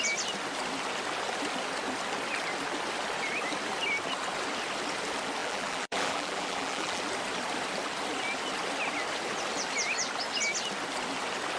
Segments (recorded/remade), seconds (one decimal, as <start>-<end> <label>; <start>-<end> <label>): 0.0-5.4 recorded; 5.4-7.0 remade; 7.0-11.6 recorded